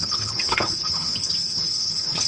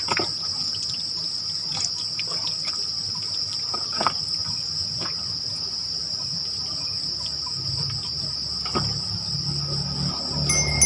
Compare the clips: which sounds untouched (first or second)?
second